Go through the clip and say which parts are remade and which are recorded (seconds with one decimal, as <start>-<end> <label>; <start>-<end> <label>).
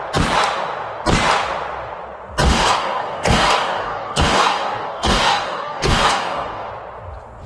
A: 0.0-2.4 recorded; 2.4-6.7 remade; 6.7-7.5 recorded